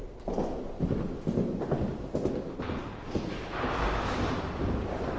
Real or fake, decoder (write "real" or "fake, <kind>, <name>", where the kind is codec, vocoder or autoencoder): real